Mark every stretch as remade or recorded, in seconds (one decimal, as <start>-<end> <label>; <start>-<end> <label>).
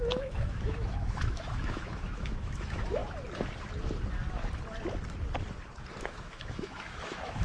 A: 0.0-3.0 remade; 3.0-6.0 recorded; 6.0-7.4 remade